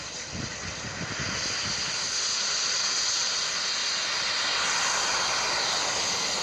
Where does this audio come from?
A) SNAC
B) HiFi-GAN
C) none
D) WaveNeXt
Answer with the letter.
C